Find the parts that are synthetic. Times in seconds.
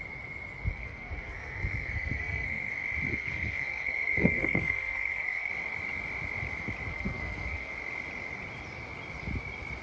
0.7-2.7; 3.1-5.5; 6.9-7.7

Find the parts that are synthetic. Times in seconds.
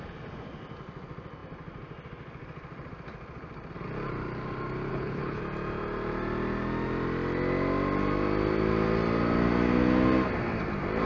4.9-5.4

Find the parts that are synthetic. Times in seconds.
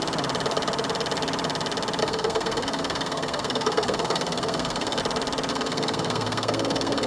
2.0-5.0; 5.5-7.1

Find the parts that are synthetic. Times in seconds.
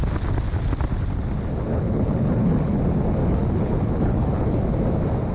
1.7-2.8; 3.2-4.6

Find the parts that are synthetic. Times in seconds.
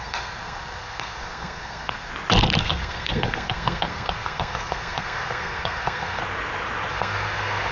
0.0-2.1; 2.6-6.2; 6.9-7.7